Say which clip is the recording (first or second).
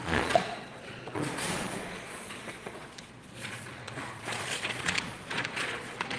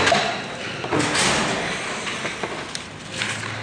second